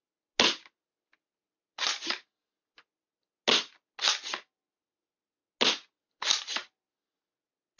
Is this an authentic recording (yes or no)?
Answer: yes